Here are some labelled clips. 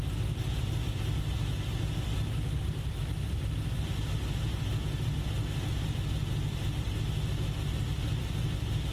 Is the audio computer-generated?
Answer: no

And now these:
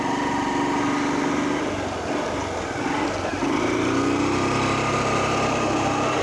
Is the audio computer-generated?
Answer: no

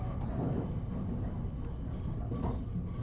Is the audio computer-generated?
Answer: no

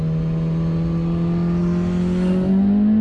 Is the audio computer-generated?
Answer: no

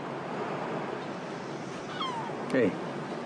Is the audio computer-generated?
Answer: no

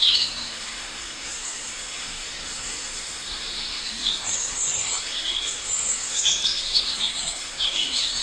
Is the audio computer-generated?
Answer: yes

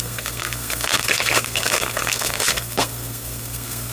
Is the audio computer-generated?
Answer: yes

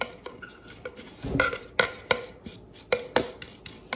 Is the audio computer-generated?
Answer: no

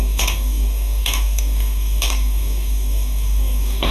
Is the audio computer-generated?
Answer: yes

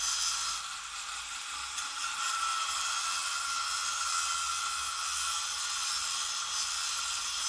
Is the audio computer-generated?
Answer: yes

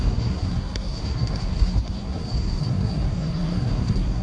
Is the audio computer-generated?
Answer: yes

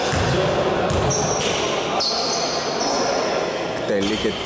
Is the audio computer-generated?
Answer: no